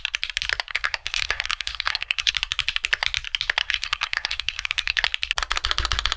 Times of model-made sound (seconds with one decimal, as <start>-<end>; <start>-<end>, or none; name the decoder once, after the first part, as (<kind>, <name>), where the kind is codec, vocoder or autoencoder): 0.7-2.3 (codec, SNAC); 3.6-5.0